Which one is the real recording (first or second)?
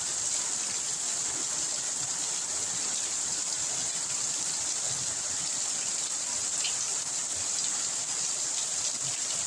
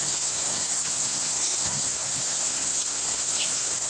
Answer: first